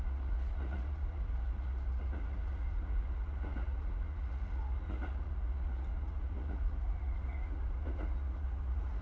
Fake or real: fake